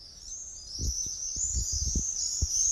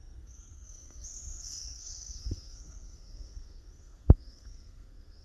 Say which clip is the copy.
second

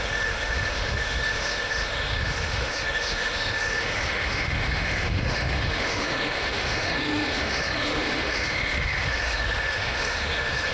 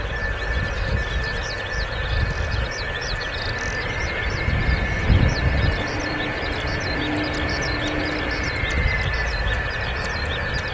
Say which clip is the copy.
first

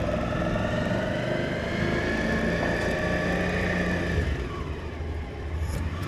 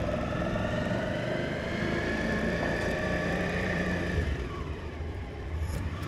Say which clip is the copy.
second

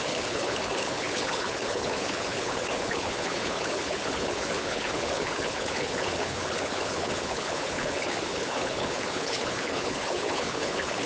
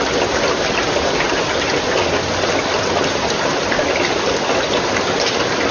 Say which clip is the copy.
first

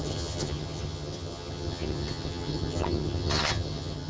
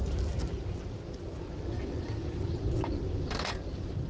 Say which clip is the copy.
first